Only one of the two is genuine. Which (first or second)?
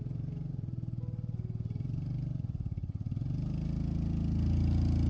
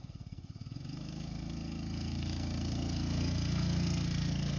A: first